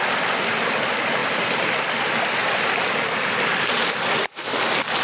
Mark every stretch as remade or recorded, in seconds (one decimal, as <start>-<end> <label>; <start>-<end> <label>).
0.0-1.2 recorded; 1.2-1.8 remade; 1.8-5.0 recorded